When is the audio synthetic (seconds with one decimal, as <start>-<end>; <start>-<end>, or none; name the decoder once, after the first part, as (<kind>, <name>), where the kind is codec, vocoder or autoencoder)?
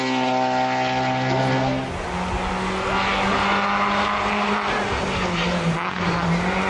none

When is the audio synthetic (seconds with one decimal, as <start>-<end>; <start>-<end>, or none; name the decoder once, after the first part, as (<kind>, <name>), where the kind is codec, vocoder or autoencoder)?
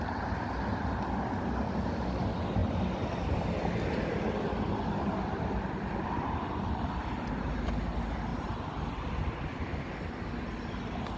none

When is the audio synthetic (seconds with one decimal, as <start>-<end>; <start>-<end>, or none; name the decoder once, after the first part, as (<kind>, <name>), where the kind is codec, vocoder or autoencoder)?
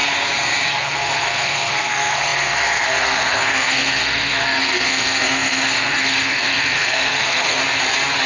0.7-7.6 (codec, SNAC)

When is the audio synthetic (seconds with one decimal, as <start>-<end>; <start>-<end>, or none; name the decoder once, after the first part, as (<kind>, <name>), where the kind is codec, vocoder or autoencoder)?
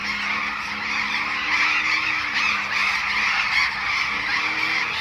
none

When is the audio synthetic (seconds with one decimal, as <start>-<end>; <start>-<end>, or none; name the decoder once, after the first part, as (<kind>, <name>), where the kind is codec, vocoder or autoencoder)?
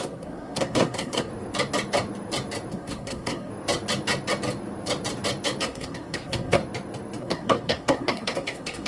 0.0-1.3 (codec, SNAC); 2.7-3.5; 5.6-6.6; 7.2-8.9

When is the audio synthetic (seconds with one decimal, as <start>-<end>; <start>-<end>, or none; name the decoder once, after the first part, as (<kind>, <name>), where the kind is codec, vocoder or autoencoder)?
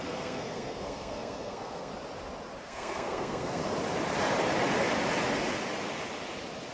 0.0-1.9 (codec, SNAC); 2.6-3.6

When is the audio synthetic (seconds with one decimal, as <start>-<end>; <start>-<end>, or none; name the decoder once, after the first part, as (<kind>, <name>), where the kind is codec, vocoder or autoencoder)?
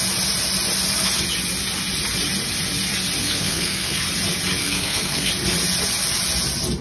3.2-4.0 (codec, SNAC); 4.6-5.3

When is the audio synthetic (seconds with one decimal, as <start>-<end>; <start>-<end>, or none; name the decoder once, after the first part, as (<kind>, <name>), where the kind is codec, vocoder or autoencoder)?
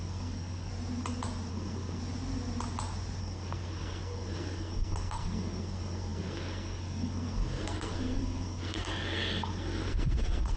0.0-0.7 (codec, SNAC); 1.5-2.0; 3.2-10.6